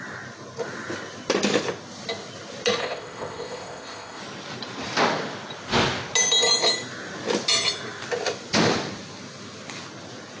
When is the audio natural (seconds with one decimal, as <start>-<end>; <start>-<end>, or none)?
0.0-2.8; 4.2-10.4